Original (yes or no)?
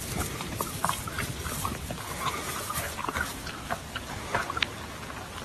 yes